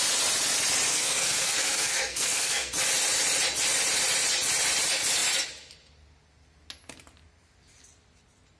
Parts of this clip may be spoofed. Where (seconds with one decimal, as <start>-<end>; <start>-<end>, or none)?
0.9-2.7